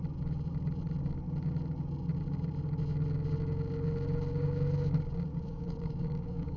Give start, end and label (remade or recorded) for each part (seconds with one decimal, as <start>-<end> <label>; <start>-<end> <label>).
0.0-5.3 recorded; 5.3-6.6 remade